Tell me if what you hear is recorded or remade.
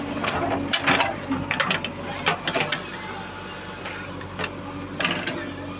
recorded